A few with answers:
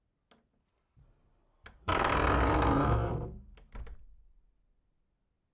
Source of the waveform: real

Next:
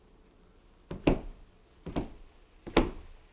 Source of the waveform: real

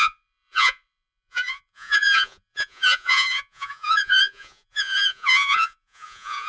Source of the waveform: fake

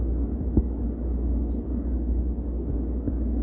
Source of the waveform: real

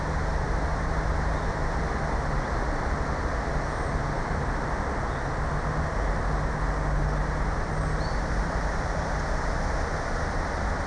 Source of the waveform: real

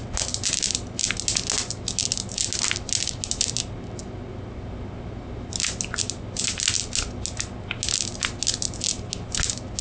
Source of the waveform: real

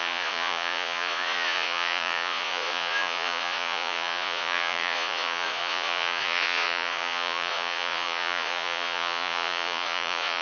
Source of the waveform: fake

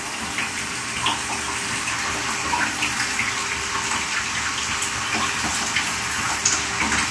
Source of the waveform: real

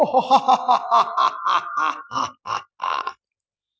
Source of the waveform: real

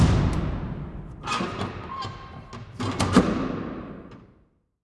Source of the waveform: real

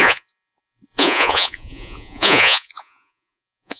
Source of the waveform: fake